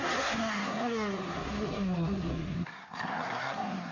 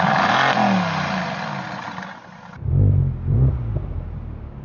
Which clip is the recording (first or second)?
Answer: second